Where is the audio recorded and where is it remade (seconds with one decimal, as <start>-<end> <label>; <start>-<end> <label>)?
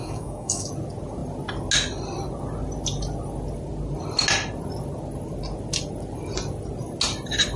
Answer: 0.0-0.7 remade; 0.7-7.6 recorded